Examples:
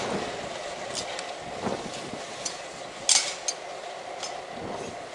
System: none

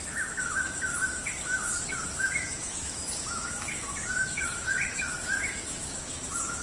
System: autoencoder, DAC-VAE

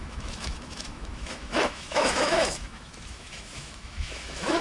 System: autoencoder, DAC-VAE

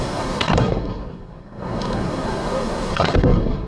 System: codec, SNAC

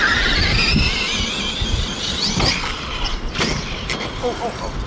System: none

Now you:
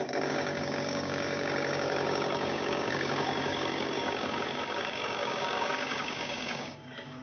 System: codec, DAC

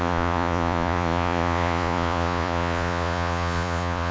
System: vocoder, Vocos